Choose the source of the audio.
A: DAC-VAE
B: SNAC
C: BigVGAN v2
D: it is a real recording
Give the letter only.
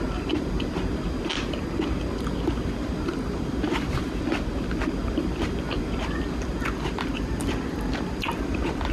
D